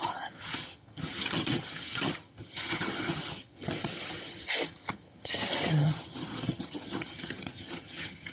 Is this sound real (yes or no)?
no